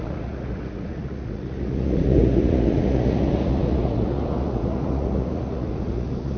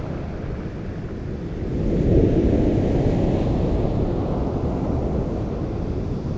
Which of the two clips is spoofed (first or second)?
first